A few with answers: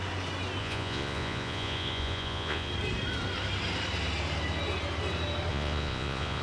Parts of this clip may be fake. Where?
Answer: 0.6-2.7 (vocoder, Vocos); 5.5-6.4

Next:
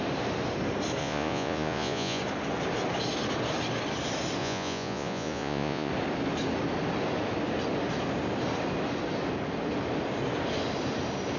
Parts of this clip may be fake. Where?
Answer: 1.0-2.2 (vocoder, Vocos); 4.4-5.9